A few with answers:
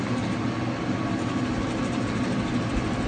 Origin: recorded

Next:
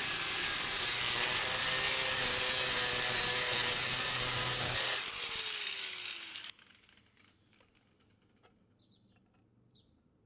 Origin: recorded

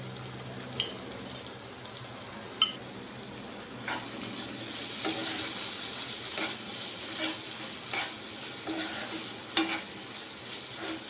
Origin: recorded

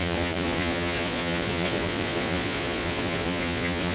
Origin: remade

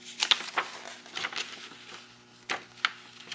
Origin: recorded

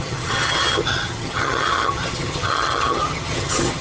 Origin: remade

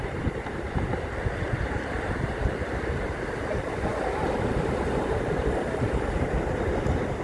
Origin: remade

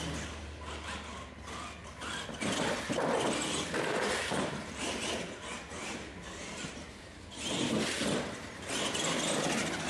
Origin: recorded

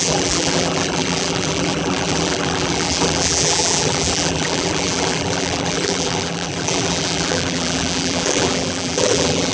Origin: remade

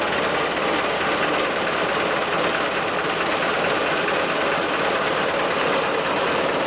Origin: recorded